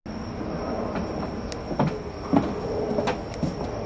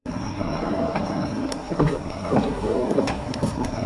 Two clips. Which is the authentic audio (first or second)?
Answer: first